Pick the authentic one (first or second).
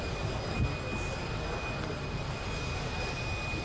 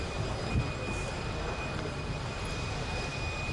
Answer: first